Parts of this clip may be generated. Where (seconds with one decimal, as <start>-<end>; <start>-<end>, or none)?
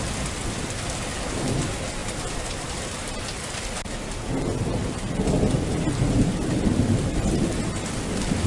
none